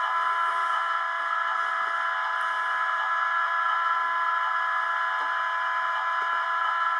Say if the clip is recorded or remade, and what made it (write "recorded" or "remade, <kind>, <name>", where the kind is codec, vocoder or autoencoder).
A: recorded